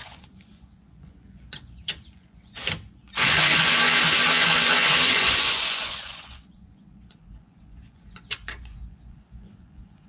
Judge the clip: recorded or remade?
remade